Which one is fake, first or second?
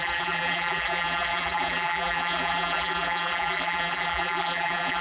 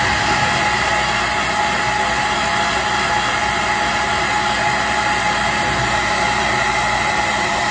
first